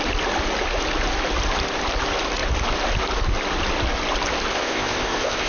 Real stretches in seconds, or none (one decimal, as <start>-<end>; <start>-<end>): 0.0-4.5